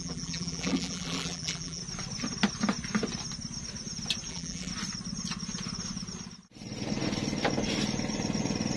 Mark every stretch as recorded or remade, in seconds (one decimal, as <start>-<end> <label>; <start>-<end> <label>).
0.0-1.8 remade; 1.8-4.3 recorded; 4.3-4.7 remade; 4.7-8.8 recorded